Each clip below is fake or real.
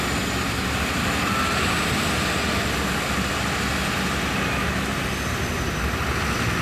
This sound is real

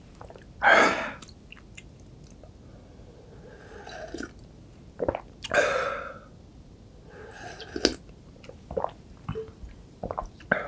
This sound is real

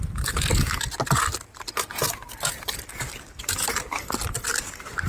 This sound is real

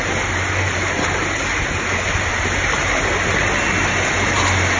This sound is real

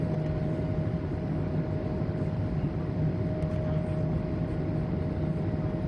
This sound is real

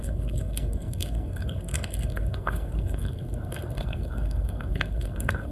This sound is fake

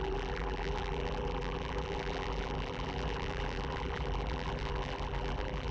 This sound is fake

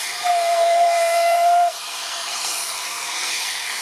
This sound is fake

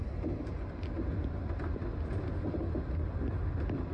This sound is real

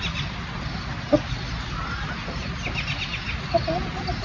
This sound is real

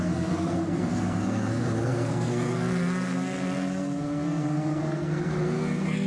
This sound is fake